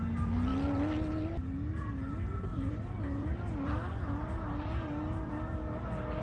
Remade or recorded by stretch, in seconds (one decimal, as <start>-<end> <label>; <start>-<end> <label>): 0.0-2.5 recorded; 2.5-5.3 remade; 5.3-6.2 recorded